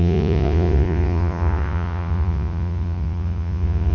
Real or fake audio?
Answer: fake